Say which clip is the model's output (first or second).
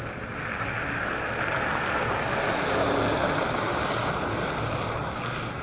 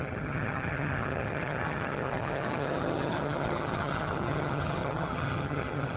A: second